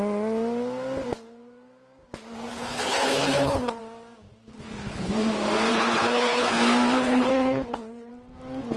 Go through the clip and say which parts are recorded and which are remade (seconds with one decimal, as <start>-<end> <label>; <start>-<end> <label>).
0.0-2.5 recorded; 2.5-3.8 remade; 3.8-4.5 recorded; 4.5-5.1 remade; 5.1-5.7 recorded; 5.7-6.6 remade; 6.6-7.0 recorded; 7.0-8.1 remade; 8.1-8.8 recorded